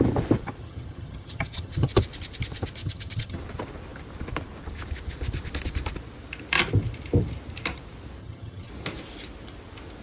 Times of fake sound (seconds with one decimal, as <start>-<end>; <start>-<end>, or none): 0.6-1.9; 2.8-3.4; 8.2-8.7